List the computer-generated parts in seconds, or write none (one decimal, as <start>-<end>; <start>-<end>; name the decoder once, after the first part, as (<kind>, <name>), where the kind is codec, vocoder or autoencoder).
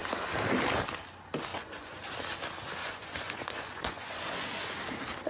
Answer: 1.5-2.0 (vocoder, Vocos); 2.8-4.8